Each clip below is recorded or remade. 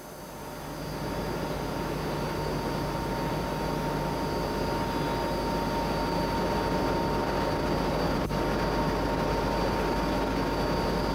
recorded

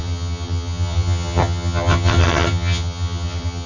remade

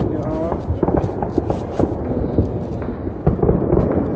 recorded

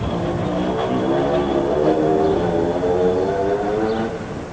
recorded